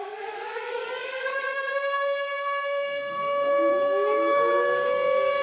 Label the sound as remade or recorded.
remade